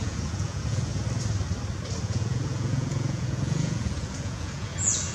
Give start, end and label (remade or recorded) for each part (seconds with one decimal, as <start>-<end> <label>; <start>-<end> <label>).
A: 0.0-0.9 remade; 0.9-2.0 recorded; 2.0-5.1 remade